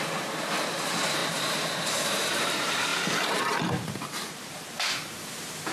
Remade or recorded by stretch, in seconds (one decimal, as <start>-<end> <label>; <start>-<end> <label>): 0.0-5.7 remade